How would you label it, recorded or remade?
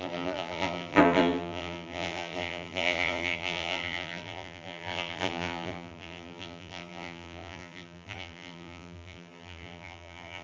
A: remade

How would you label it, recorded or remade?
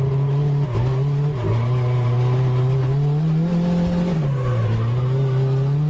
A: recorded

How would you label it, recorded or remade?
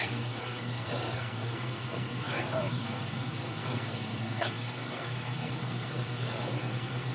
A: remade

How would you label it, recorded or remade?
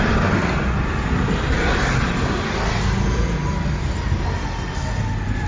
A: recorded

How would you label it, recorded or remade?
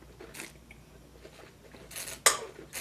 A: recorded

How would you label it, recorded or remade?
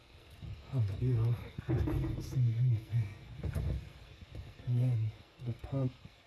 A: remade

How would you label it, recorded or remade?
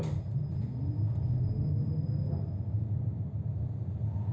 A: recorded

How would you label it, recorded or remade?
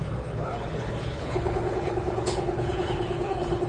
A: remade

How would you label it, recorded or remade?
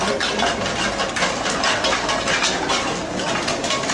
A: recorded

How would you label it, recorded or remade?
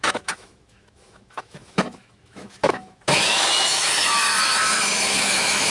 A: remade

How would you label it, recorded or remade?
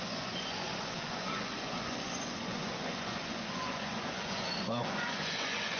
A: remade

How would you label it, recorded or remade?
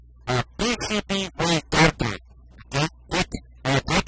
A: recorded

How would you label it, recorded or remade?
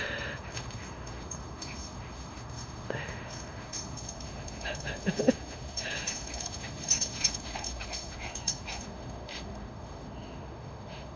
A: remade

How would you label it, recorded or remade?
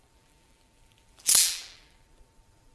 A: remade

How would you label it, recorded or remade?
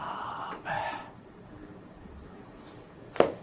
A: recorded